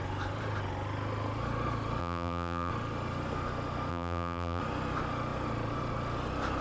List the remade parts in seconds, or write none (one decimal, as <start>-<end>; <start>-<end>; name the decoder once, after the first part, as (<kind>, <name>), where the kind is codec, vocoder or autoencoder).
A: 2.0-2.7 (vocoder, BigVGAN v2); 3.9-4.6